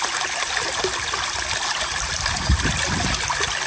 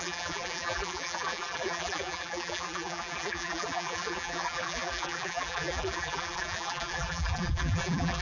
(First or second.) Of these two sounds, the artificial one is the second